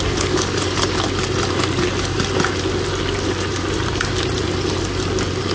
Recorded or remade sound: recorded